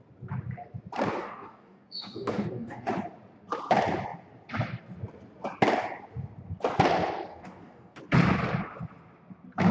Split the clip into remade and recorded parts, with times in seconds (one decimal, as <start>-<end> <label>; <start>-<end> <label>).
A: 0.0-1.2 recorded; 1.2-2.9 remade; 2.9-7.3 recorded; 7.3-8.0 remade; 8.0-9.7 recorded